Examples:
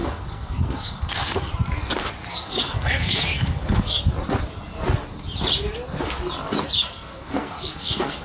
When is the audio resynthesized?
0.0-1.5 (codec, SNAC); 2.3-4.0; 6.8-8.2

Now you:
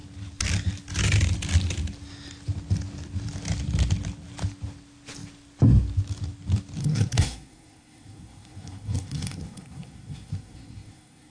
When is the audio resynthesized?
6.8-11.3 (codec, SNAC)

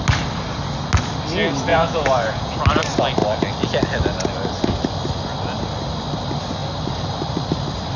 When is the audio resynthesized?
1.7-2.5 (vocoder, Vocos)